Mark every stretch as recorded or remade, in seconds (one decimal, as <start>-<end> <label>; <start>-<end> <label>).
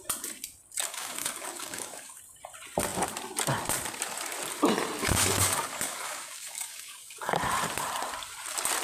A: 0.0-0.8 recorded; 0.8-2.2 remade; 2.2-5.0 recorded; 5.0-7.4 remade; 7.4-8.8 recorded